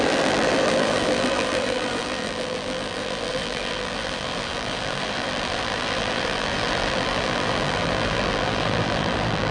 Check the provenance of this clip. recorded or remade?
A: remade